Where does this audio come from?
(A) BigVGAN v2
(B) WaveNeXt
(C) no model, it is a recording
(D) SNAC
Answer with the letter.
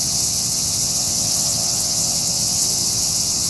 B